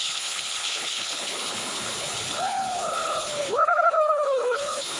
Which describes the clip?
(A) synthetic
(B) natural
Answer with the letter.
A